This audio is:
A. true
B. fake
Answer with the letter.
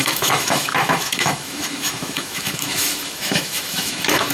B